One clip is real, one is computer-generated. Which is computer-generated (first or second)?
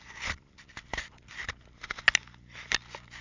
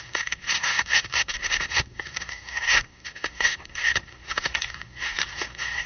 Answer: second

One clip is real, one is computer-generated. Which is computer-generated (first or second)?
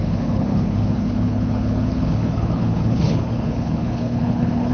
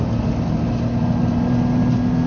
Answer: first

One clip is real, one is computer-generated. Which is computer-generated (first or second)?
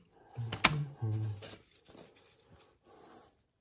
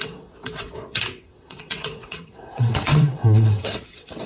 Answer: second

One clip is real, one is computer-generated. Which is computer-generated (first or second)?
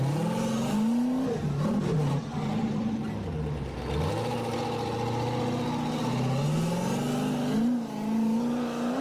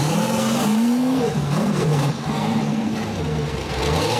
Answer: second